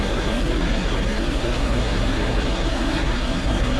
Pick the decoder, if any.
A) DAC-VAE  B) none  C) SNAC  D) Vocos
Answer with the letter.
C